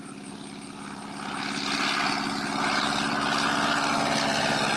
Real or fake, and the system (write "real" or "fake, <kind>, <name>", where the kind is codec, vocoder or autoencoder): real